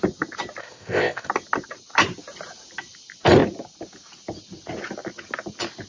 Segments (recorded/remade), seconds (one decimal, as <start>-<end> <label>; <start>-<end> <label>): 0.0-0.6 recorded; 0.6-1.3 remade; 1.3-5.9 recorded